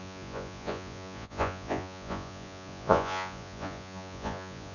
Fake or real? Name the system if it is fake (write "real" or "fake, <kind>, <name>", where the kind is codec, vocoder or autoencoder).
fake, vocoder, Vocos